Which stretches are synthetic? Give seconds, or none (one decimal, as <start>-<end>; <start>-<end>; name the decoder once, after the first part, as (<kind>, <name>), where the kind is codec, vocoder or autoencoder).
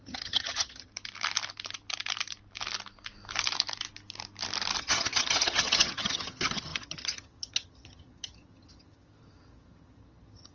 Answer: 0.0-0.9 (vocoder, HiFi-GAN); 4.8-10.5